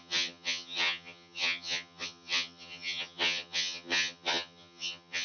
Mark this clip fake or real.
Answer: fake